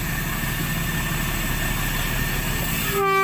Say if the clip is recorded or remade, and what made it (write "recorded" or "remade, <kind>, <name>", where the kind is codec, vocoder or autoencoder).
recorded